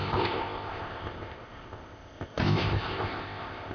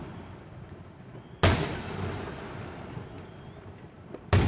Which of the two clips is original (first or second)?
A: second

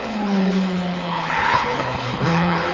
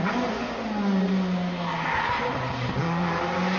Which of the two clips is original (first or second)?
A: second